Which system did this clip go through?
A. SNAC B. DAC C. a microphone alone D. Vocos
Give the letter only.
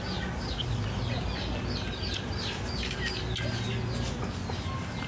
C